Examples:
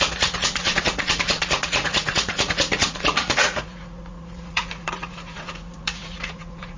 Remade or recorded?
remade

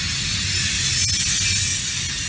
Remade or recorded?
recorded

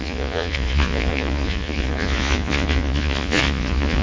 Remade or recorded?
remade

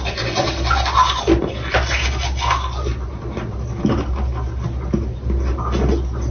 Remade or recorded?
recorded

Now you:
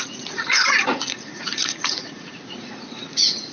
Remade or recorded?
remade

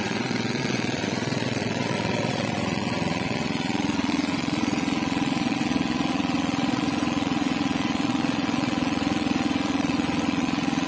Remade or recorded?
remade